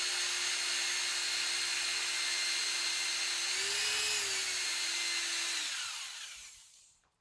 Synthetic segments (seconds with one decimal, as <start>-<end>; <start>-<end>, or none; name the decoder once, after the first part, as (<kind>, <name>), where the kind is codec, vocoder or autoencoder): 4.4-5.0 (vocoder, BigVGAN v2); 5.6-7.2